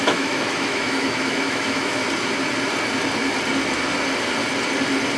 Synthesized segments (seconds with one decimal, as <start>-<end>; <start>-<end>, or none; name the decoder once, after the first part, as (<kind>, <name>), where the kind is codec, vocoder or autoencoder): 0.0-2.0 (autoencoder, DAC-VAE)